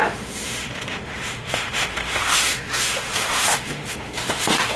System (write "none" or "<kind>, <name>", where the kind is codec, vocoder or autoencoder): autoencoder, DAC-VAE